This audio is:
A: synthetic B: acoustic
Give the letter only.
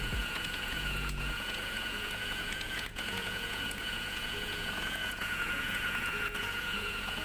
A